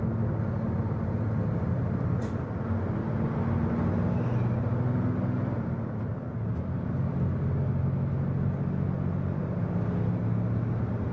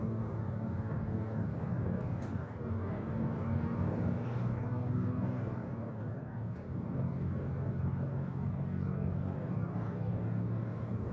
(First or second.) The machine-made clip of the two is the second